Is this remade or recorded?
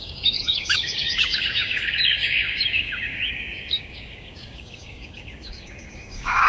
remade